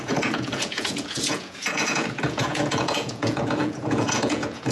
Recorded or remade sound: remade